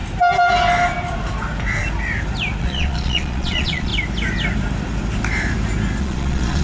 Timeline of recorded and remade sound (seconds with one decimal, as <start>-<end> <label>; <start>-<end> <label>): 0.0-2.6 recorded; 2.6-3.9 remade; 3.9-6.0 recorded; 6.0-6.6 remade